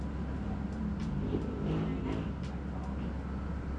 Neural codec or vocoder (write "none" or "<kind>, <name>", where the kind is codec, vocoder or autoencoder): none